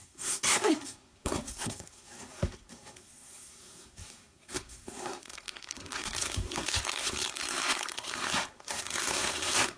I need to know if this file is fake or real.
fake